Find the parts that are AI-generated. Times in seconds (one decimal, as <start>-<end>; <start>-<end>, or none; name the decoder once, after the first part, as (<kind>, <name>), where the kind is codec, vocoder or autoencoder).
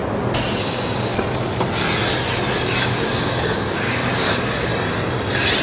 0.6-1.1 (codec, DAC); 2.8-4.7